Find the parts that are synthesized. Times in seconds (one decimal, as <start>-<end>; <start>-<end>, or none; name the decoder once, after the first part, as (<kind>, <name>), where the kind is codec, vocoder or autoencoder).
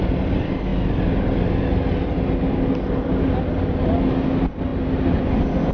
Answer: none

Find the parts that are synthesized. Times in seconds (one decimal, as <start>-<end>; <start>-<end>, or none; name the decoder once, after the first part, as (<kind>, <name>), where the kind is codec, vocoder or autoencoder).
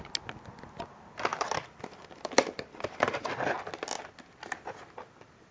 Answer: 1.3-3.7 (vocoder, BigVGAN v2)